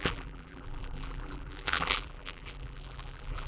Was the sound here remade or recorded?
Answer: remade